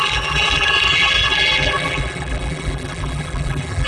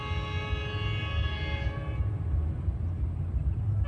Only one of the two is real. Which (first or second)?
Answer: second